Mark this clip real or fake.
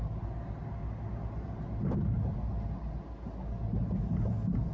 real